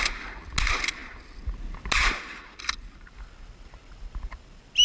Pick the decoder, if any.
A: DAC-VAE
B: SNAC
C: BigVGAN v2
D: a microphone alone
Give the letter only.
D